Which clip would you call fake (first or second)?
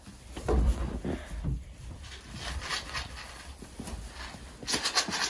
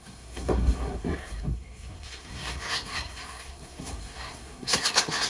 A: second